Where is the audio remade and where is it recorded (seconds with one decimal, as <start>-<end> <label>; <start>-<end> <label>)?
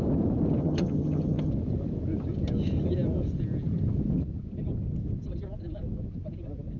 0.0-0.6 recorded; 0.6-1.5 remade; 1.5-6.8 recorded